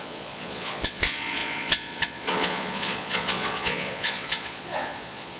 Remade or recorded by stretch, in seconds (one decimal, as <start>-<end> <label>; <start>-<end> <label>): 0.0-5.4 remade